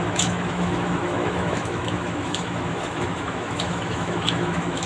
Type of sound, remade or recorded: remade